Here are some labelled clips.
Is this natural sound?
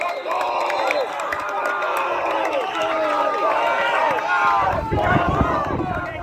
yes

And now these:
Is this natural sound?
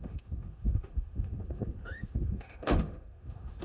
no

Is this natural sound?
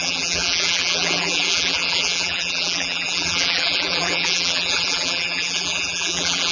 no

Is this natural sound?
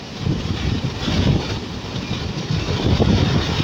yes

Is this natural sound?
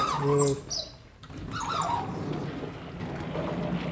yes